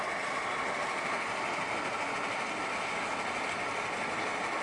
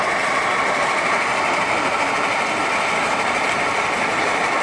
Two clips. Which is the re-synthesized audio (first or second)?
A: second